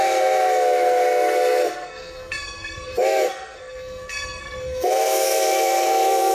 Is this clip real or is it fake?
fake